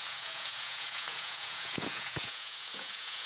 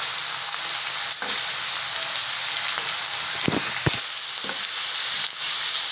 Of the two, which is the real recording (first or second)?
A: second